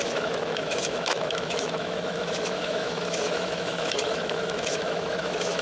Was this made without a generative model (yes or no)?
no